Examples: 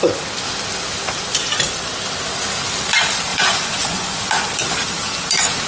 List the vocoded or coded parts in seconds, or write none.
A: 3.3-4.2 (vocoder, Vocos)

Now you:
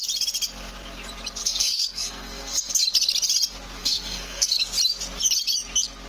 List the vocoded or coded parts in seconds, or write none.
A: 1.4-2.8 (codec, SNAC); 3.8-4.6

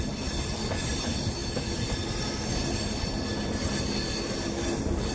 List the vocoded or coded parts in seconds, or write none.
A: none

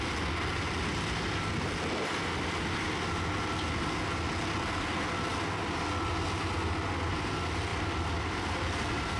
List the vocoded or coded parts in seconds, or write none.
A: 7.7-9.2 (vocoder, BigVGAN v2)

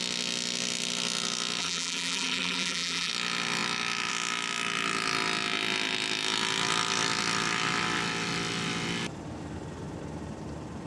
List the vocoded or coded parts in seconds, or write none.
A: 1.6-3.1 (vocoder, BigVGAN v2)

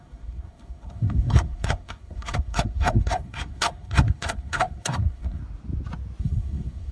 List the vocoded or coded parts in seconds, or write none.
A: 0.0-5.4 (codec, SNAC); 6.2-6.9